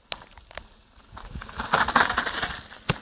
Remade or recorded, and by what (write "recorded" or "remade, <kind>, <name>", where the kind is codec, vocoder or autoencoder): recorded